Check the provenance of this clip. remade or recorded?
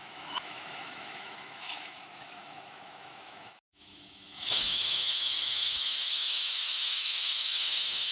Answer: remade